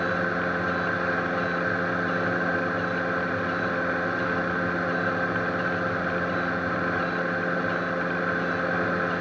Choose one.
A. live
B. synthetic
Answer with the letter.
A